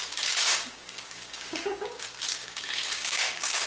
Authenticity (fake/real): fake